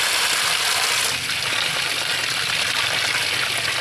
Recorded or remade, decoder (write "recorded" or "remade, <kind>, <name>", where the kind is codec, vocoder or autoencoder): recorded